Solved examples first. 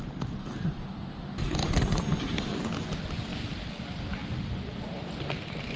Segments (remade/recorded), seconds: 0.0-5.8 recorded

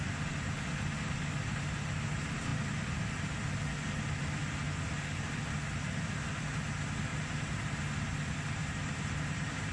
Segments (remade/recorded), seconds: 0.0-7.1 recorded; 7.1-7.8 remade; 7.8-8.6 recorded; 8.6-9.7 remade